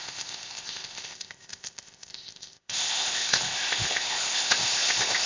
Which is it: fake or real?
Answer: fake